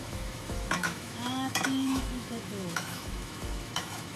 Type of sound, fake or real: fake